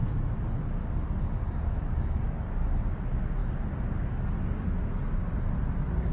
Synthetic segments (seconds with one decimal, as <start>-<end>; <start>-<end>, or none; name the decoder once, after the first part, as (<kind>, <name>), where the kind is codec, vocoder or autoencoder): none